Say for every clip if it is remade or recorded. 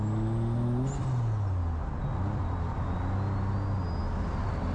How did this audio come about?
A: recorded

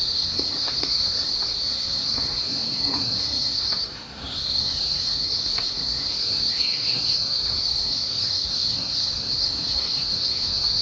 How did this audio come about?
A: remade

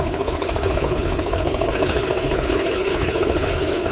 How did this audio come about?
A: remade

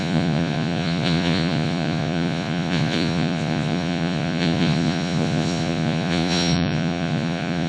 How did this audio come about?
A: remade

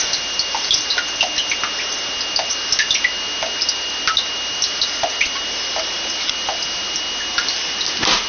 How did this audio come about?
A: recorded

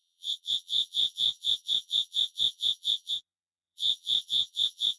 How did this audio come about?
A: remade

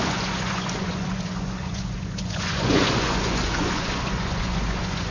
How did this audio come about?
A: remade